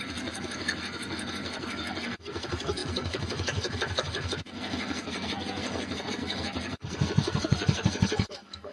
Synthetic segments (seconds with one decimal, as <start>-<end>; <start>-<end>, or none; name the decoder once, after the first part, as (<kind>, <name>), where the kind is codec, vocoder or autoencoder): 0.0-8.7 (codec, SNAC)